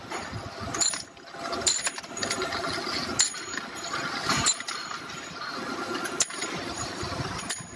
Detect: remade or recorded recorded